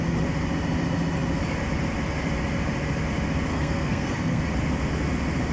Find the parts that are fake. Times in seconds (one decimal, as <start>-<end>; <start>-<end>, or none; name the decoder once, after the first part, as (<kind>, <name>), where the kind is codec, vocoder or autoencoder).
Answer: 3.5-4.4 (codec, SNAC)